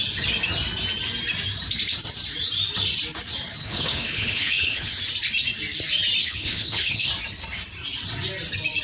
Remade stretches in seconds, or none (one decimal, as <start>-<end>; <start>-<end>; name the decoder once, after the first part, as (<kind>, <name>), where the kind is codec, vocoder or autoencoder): 3.6-5.0 (codec, HILCodec); 6.2-7.1